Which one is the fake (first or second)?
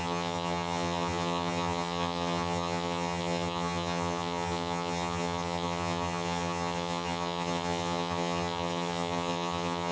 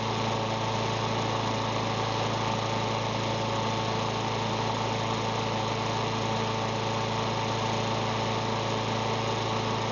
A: first